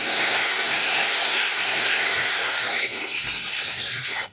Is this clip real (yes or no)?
no